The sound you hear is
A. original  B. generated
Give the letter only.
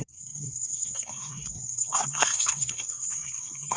B